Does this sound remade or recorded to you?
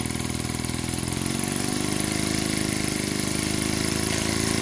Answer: recorded